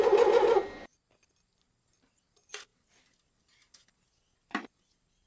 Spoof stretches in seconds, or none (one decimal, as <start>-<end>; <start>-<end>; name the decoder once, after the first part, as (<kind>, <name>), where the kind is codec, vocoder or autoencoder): none